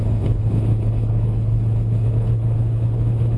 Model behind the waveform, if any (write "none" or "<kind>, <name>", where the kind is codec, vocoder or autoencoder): codec, HILCodec